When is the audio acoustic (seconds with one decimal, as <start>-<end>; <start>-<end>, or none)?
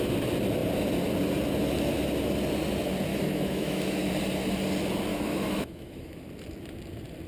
0.0-3.1; 4.1-5.1; 6.2-7.3